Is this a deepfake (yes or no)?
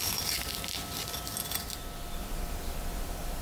yes